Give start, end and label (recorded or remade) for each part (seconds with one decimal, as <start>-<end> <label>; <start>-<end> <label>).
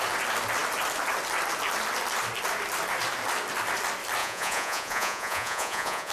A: 0.0-4.2 recorded; 4.2-6.1 remade